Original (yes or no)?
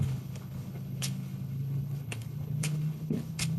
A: no